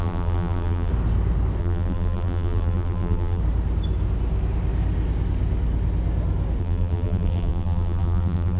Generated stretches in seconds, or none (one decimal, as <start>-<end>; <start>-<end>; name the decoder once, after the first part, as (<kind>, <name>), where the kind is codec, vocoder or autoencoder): 0.0-0.9 (vocoder, BigVGAN v2); 1.6-3.4; 6.6-8.6